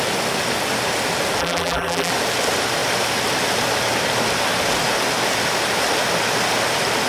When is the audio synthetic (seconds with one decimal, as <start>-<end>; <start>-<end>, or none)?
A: 1.4-2.1

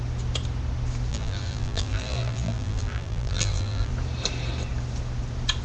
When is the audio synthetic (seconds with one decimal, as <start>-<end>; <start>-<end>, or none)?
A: 1.1-3.9